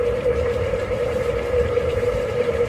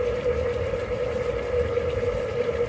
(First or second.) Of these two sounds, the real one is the second